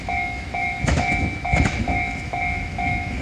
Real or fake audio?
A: fake